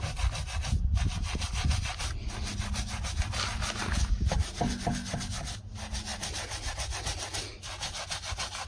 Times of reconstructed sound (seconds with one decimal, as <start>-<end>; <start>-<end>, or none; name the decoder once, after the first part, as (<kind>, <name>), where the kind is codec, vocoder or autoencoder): none